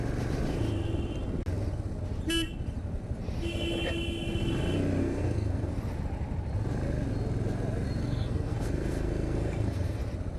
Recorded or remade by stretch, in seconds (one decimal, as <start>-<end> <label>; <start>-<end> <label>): 0.0-5.0 recorded; 5.0-5.7 remade; 5.7-8.0 recorded; 8.0-10.0 remade; 10.0-10.4 recorded